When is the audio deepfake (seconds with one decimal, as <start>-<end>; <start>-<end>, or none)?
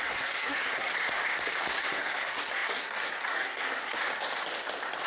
0.0-0.9; 1.7-4.0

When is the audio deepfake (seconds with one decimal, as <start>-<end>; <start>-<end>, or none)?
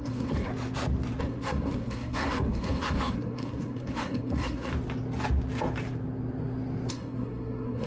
0.0-0.5; 1.2-4.7; 6.9-7.9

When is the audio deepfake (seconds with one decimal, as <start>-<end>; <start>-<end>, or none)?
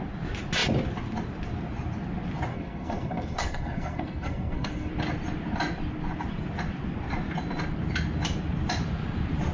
2.5-4.9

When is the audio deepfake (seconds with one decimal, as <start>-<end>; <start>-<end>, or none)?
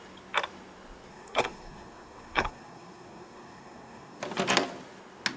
1.1-4.2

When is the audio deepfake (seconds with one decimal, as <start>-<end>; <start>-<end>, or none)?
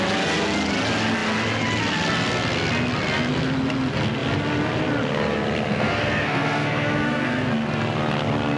5.7-7.5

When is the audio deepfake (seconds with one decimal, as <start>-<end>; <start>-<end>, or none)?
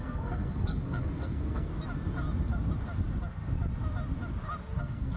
0.0-1.7; 4.8-5.2